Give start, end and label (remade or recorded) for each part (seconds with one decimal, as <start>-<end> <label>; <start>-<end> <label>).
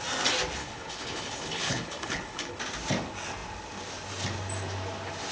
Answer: 0.0-0.6 recorded; 0.6-2.6 remade; 2.6-5.3 recorded